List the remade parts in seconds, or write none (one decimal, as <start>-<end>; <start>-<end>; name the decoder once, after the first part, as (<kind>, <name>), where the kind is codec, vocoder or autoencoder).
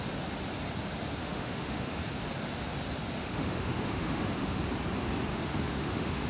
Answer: 1.2-2.0 (autoencoder, DAC-VAE); 3.2-4.6; 5.3-6.3